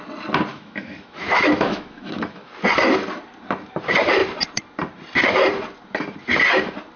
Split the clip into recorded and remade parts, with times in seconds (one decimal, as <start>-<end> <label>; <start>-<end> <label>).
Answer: 0.0-0.5 recorded; 0.5-2.5 remade; 2.5-7.0 recorded